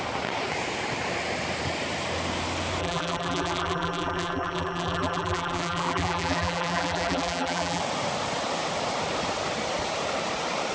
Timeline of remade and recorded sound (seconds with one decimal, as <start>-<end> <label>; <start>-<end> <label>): 0.0-2.8 recorded; 2.8-7.8 remade; 7.8-10.7 recorded